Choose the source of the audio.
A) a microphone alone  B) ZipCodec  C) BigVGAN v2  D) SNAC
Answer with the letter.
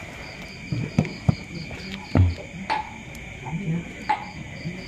A